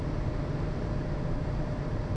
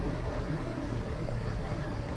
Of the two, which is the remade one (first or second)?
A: second